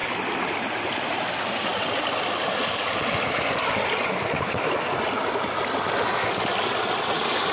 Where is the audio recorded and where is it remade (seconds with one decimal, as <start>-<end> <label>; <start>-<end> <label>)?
0.0-7.5 recorded